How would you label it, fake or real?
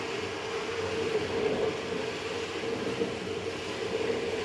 real